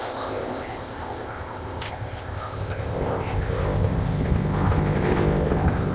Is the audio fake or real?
fake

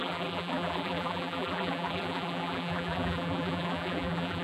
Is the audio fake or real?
fake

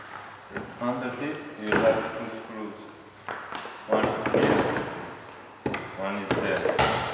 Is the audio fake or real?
real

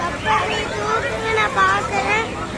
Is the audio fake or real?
real